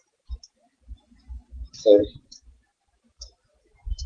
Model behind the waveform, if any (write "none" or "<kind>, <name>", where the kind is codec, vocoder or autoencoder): vocoder, BigVGAN v2